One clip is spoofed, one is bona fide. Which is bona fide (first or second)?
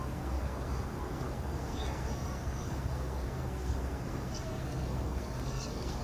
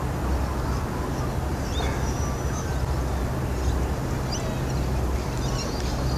second